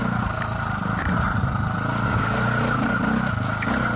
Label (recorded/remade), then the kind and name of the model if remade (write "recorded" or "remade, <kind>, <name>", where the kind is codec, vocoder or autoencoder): recorded